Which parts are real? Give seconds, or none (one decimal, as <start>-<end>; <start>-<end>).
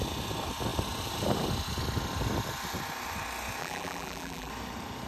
0.0-3.6; 4.5-5.1